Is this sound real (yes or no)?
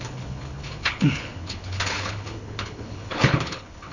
no